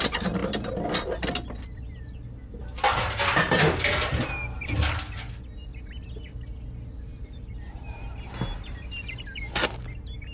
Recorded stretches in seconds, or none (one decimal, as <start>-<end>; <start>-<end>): 0.0-7.1; 8.3-10.3